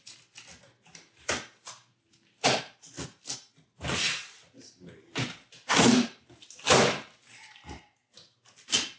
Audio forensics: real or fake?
real